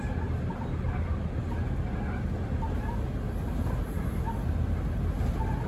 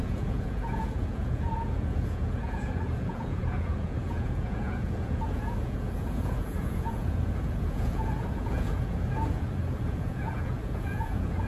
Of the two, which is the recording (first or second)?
first